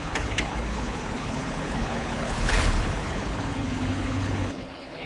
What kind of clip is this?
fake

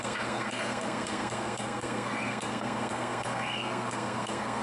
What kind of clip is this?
fake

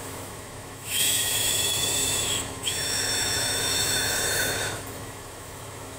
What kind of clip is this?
fake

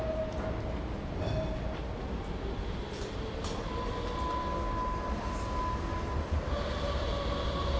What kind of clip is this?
real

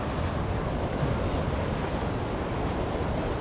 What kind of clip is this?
real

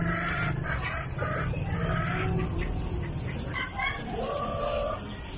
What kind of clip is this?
fake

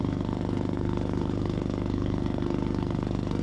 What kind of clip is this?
fake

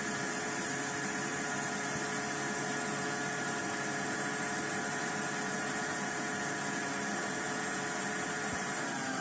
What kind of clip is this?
real